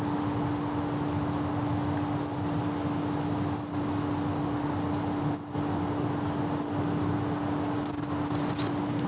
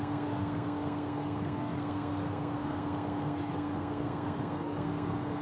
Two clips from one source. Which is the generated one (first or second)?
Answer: second